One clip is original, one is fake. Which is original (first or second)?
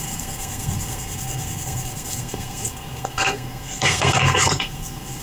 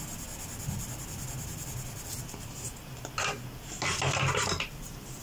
second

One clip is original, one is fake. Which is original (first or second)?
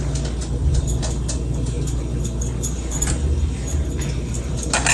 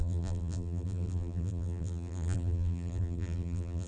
first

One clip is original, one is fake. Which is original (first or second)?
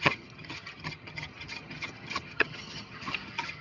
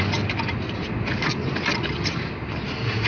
second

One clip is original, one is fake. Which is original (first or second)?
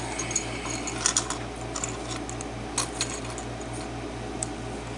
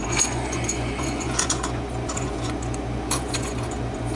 first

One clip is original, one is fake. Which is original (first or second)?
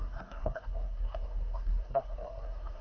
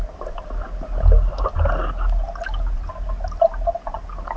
second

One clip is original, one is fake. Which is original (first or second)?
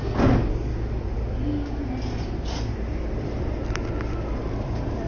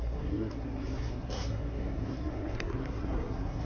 first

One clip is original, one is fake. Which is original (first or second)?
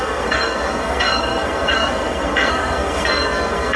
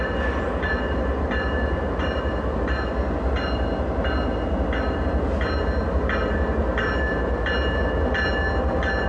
second